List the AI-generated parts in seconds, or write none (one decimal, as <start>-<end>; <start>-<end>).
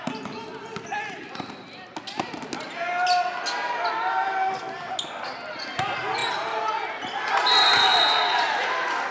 none